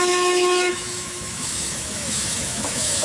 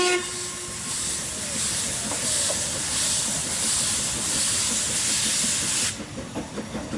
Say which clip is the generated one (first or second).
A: first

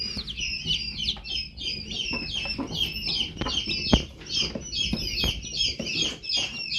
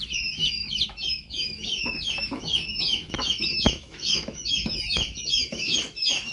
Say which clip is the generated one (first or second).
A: second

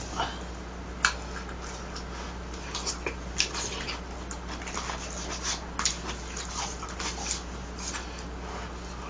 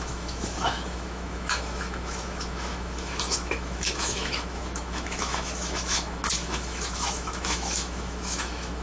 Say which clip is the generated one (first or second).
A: second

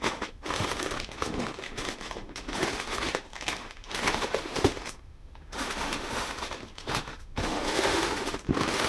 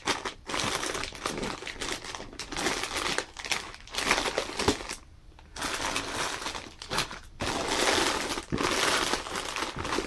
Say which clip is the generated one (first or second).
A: first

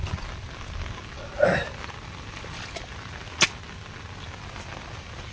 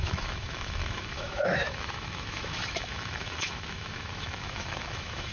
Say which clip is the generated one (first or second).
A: second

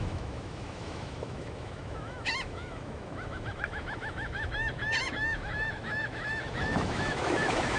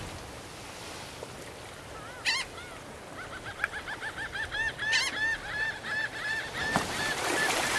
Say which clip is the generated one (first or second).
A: first